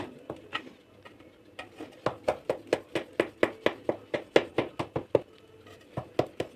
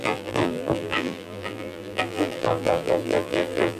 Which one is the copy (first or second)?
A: second